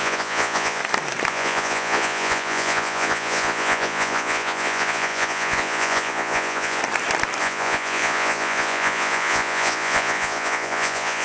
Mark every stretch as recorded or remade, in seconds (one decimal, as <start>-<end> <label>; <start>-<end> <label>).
0.0-0.8 remade; 0.8-1.3 recorded; 1.3-6.8 remade; 6.8-7.4 recorded; 7.4-11.2 remade